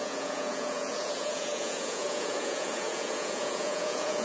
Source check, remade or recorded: remade